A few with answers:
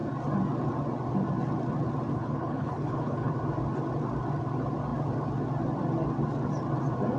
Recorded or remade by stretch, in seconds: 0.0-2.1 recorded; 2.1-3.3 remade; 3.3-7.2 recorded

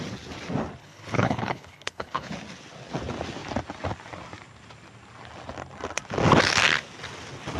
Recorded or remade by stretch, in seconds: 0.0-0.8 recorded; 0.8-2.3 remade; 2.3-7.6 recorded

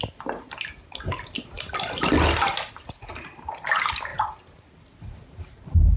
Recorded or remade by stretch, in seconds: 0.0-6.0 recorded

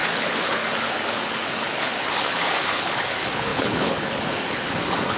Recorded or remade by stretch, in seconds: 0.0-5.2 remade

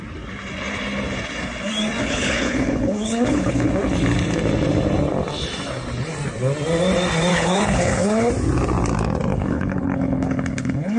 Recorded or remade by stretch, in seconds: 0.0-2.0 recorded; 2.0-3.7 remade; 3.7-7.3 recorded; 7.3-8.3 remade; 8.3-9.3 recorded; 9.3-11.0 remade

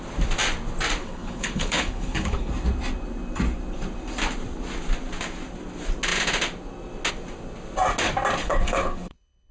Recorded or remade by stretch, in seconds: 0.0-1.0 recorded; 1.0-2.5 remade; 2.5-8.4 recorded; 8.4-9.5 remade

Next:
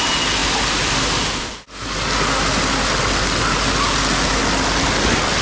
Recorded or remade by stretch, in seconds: 0.0-5.4 recorded